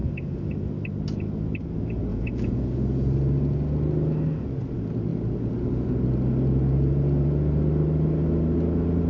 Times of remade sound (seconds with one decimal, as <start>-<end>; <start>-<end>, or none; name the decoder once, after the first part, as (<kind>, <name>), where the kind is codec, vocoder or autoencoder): 0.0-0.5 (vocoder, Vocos); 2.1-2.6